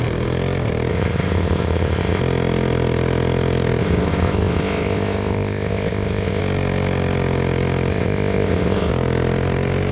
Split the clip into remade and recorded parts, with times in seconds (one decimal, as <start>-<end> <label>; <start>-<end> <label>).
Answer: 0.0-0.9 recorded; 0.9-2.2 remade; 2.2-3.8 recorded; 3.8-6.4 remade; 6.4-7.9 recorded; 7.9-8.9 remade; 8.9-9.9 recorded